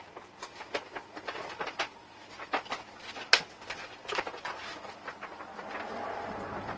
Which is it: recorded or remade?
recorded